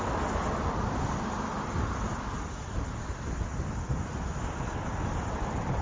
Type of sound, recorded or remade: recorded